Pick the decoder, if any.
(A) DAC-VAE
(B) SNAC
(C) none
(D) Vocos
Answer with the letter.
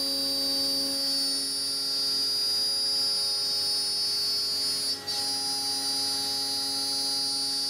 C